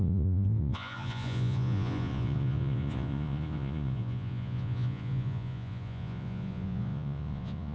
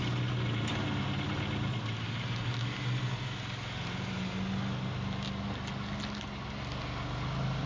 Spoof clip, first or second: first